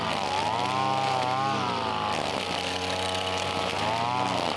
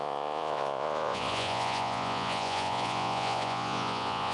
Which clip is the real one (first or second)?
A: first